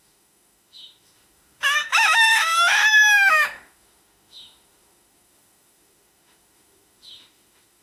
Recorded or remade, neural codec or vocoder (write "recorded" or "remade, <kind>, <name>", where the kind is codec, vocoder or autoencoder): remade, autoencoder, DAC-VAE